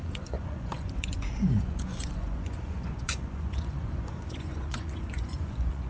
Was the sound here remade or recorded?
remade